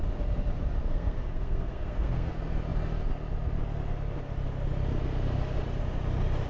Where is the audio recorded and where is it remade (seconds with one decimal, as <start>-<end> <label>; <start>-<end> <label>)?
0.0-0.8 recorded; 0.8-2.3 remade; 2.3-6.5 recorded